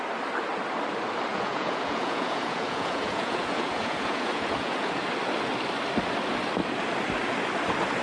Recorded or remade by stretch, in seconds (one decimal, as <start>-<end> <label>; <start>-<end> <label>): 0.0-1.3 recorded; 1.3-5.0 remade; 5.0-8.0 recorded